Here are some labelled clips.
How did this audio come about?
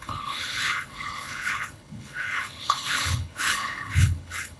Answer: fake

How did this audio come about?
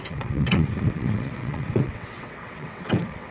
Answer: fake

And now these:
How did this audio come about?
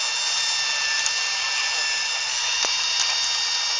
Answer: real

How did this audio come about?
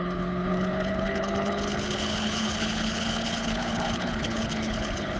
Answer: fake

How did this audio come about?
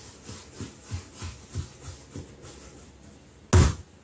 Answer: real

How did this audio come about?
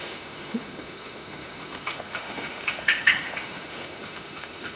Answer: fake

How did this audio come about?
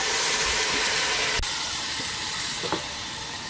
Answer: real